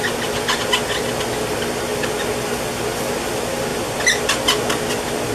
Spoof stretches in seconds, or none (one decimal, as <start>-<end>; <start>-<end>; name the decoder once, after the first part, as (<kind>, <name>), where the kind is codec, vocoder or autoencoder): none